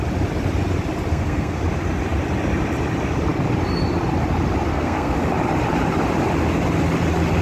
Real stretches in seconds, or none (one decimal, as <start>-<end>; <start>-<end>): 0.0-1.1; 1.6-4.7; 5.2-7.4

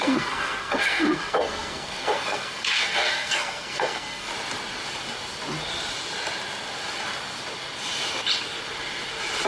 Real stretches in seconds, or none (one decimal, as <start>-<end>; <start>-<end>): 4.3-9.5

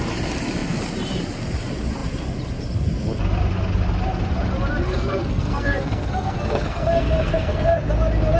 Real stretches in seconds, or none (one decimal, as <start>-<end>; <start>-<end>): 0.0-4.8; 7.8-8.4

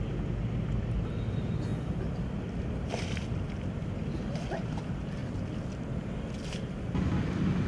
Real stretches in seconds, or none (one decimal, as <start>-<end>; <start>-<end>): 0.0-7.7

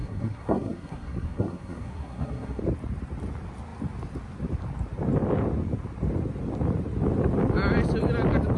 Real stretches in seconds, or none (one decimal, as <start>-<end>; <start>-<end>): 2.6-8.6